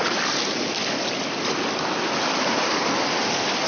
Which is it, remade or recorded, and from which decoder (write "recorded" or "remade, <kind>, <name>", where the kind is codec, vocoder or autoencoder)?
recorded